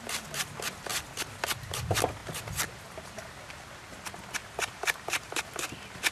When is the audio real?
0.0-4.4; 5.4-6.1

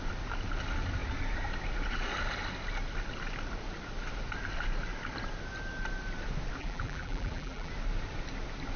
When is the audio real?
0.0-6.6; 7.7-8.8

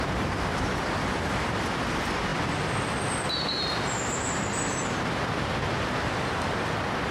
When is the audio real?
0.0-0.5; 1.6-7.1